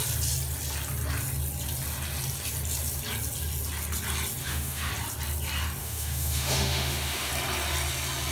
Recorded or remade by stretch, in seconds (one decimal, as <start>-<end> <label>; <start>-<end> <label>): 0.0-4.4 recorded; 4.4-4.9 remade; 4.9-5.8 recorded; 5.8-7.3 remade; 7.3-8.3 recorded

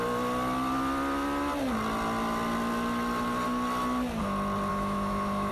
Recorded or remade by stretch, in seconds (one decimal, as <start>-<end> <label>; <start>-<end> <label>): 0.0-4.7 recorded; 4.7-5.5 remade

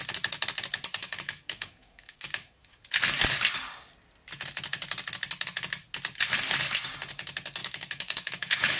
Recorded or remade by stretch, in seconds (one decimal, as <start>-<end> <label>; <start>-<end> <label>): 0.0-1.0 recorded; 1.0-2.8 remade; 2.8-7.6 recorded; 7.6-8.8 remade

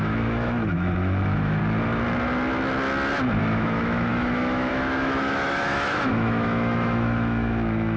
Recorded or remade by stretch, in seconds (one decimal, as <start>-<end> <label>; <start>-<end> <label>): 0.0-1.6 remade; 1.6-3.4 recorded; 3.4-8.0 remade

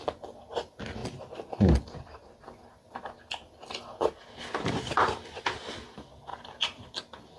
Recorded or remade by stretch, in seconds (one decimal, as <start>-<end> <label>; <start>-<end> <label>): 0.0-7.4 recorded

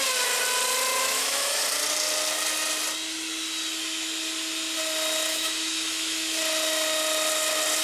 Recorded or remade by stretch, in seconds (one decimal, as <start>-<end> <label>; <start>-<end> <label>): 0.0-1.0 recorded; 1.0-1.6 remade; 1.6-5.3 recorded; 5.3-6.4 remade; 6.4-7.8 recorded

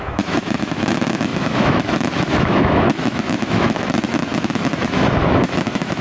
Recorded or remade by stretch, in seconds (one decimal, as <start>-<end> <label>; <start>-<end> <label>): 0.0-6.0 remade